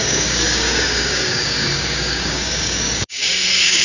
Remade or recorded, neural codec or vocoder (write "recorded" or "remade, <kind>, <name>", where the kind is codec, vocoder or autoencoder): remade, codec, DAC